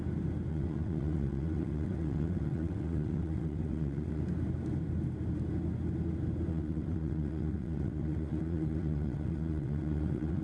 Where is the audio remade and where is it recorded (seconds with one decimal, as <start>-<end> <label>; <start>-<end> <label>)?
0.0-0.5 recorded; 0.5-4.2 remade; 4.2-6.5 recorded; 6.5-10.4 remade